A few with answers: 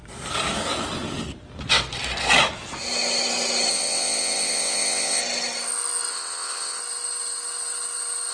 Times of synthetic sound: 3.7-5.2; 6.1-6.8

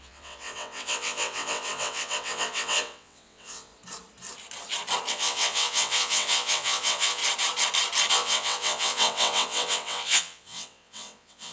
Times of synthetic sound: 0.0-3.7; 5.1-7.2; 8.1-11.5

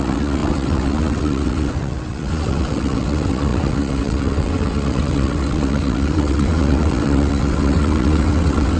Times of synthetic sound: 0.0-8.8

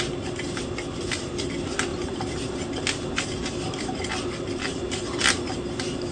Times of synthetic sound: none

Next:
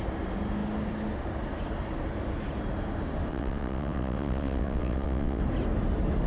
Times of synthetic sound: 3.3-5.4

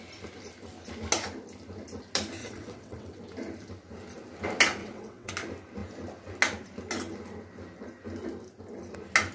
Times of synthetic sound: 2.4-3.2; 4.8-5.3

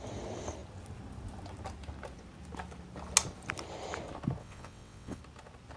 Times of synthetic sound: 4.4-5.2